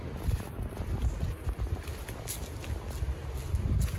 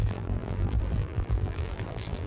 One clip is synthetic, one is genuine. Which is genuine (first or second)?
first